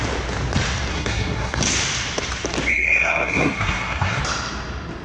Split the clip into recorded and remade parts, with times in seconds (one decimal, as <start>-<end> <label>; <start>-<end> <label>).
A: 0.0-0.9 recorded; 0.9-1.6 remade; 1.6-2.7 recorded; 2.7-4.2 remade; 4.2-5.0 recorded